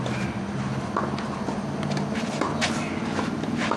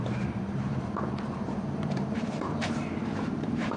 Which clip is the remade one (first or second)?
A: second